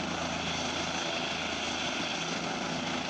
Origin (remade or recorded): recorded